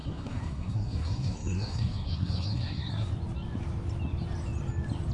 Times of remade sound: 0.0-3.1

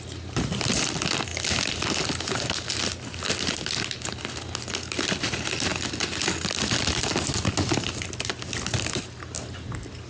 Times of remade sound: none

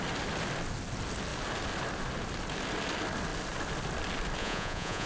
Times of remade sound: 4.4-5.1

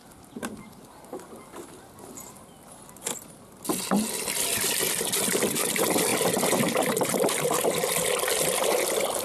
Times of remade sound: none

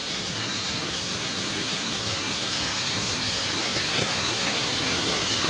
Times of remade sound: 0.0-5.5